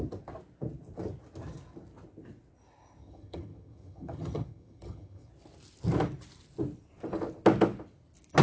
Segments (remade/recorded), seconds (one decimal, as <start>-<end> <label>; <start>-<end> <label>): 0.0-3.0 recorded; 3.0-5.3 remade; 5.3-8.4 recorded